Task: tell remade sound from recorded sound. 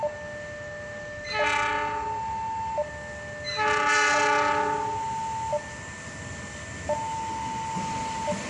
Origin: recorded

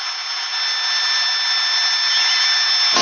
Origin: recorded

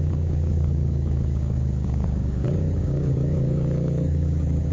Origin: remade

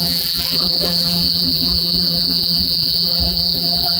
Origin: remade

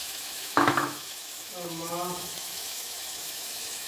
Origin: remade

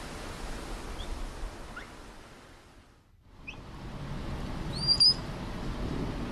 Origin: recorded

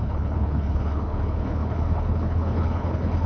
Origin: remade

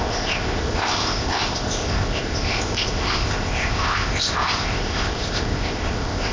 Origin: remade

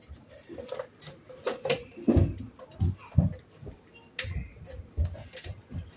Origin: recorded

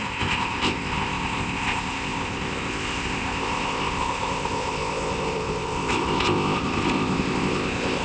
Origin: remade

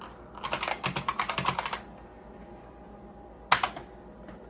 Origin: recorded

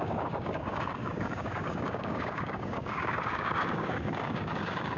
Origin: remade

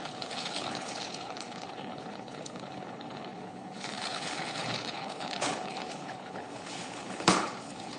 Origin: remade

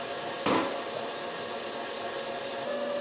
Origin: recorded